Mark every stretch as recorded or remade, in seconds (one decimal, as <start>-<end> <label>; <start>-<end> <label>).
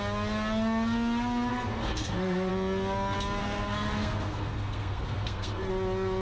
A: 0.0-1.5 recorded; 1.5-2.5 remade; 2.5-3.4 recorded; 3.4-5.7 remade; 5.7-6.2 recorded